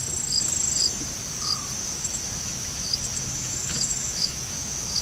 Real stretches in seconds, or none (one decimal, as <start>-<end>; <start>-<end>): 0.0-1.8